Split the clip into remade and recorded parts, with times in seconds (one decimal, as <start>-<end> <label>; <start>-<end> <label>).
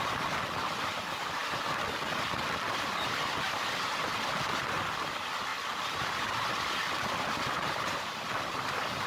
0.0-9.1 recorded